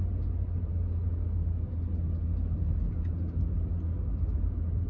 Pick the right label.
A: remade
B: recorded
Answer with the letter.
B